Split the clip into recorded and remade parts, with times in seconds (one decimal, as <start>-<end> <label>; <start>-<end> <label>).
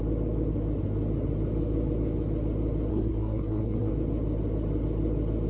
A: 0.0-2.9 recorded; 2.9-3.9 remade; 3.9-5.5 recorded